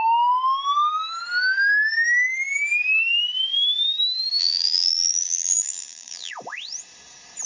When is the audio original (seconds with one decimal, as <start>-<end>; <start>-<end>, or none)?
0.0-4.4; 6.3-7.5